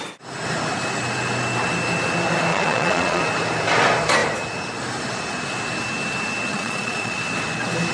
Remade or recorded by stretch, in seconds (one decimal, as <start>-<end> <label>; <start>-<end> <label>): 0.0-2.5 recorded; 2.5-3.2 remade; 3.2-6.5 recorded; 6.5-7.2 remade; 7.2-7.9 recorded